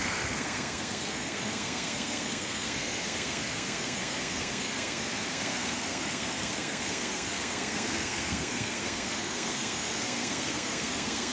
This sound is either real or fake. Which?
fake